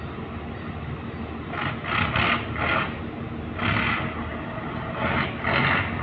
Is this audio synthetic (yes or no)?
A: no